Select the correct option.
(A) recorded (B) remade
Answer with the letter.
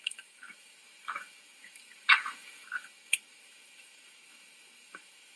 B